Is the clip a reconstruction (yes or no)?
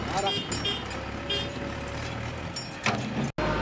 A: no